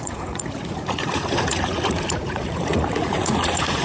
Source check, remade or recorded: remade